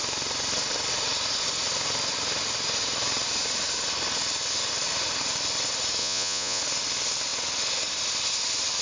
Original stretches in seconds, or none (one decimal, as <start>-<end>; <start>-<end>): 0.0-6.0; 6.6-8.8